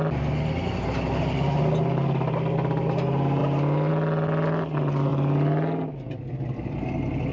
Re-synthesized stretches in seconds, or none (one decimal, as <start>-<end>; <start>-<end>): none